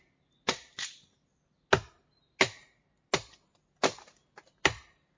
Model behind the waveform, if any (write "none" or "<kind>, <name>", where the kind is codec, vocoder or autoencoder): none